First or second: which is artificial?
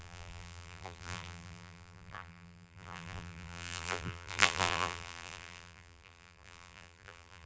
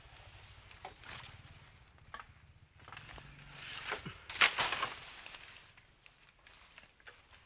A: first